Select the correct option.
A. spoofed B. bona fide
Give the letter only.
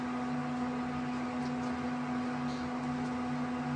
B